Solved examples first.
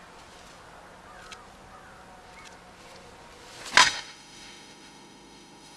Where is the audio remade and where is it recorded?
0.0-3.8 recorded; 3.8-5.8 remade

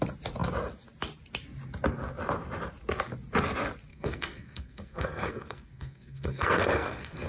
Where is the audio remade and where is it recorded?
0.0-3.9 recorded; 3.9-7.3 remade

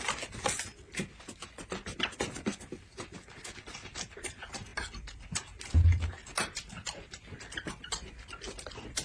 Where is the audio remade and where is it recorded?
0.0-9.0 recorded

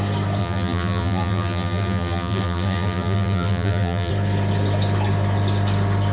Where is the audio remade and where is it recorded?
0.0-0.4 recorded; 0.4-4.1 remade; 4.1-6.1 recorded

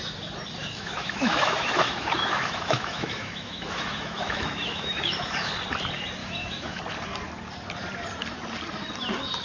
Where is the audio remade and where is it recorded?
0.0-0.6 recorded; 0.6-5.5 remade; 5.5-6.2 recorded; 6.2-6.8 remade; 6.8-9.4 recorded

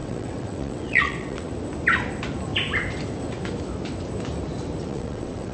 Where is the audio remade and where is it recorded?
0.0-1.5 remade; 1.5-4.8 recorded; 4.8-5.5 remade